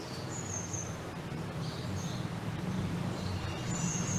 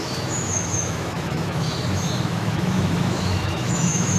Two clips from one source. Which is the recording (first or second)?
first